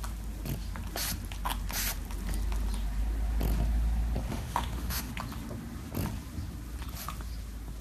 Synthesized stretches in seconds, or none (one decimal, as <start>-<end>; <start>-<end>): 4.3-5.1